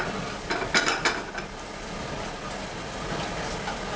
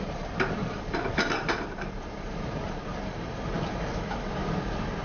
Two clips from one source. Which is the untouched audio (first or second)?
first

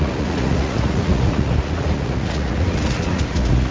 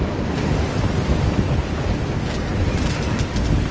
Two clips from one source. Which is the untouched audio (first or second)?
second